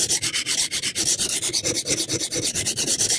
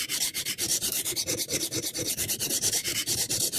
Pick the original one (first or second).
first